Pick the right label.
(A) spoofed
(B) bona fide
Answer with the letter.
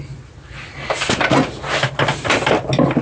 B